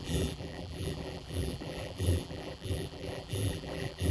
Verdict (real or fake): fake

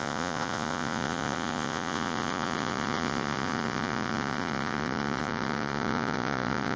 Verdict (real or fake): fake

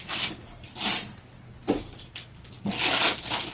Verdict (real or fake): real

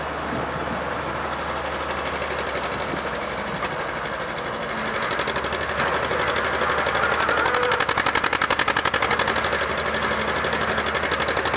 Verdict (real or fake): real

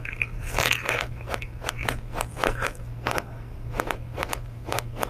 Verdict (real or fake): fake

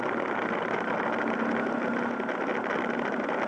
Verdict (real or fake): real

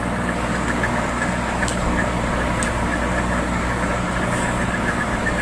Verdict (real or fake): fake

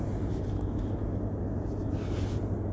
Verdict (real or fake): real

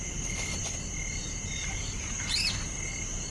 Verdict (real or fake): real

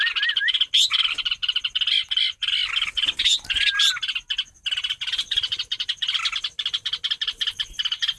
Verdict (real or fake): real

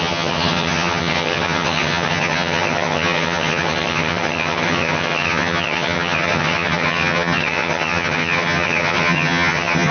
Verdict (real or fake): fake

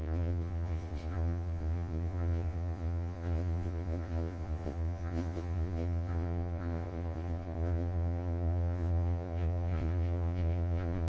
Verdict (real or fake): fake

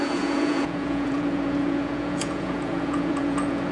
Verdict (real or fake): fake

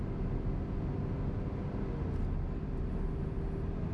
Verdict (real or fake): real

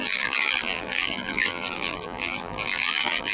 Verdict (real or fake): fake